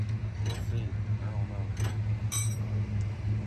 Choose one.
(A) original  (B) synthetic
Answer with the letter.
A